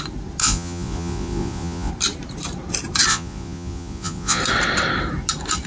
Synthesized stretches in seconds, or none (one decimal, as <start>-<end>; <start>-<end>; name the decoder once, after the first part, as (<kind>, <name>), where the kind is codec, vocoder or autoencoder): 0.4-1.9 (vocoder, Vocos); 3.1-4.4